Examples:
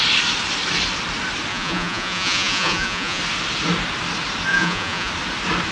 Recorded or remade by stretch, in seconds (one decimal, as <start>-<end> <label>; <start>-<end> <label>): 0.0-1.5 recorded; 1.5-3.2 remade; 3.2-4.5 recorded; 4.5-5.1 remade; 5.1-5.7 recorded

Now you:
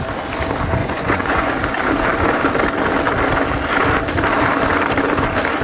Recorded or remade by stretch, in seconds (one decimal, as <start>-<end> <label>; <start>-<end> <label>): 0.0-0.8 recorded; 0.8-1.5 remade; 1.5-5.6 recorded

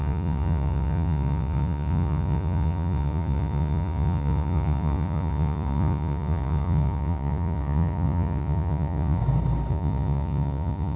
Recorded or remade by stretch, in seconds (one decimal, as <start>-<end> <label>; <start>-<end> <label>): 0.0-9.2 remade; 9.2-9.7 recorded; 9.7-11.0 remade

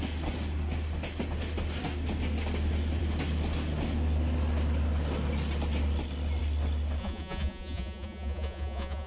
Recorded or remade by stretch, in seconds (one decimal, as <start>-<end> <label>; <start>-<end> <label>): 0.0-7.0 recorded; 7.0-9.1 remade

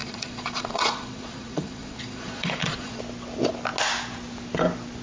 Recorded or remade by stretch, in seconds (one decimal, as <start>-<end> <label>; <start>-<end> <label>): 0.0-3.0 remade; 3.0-5.0 recorded

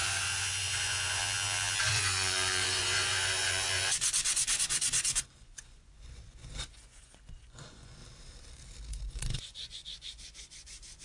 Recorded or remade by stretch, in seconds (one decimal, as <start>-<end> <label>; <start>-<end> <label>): 0.0-1.2 remade; 1.2-1.8 recorded; 1.8-8.0 remade; 8.0-8.9 recorded; 8.9-11.0 remade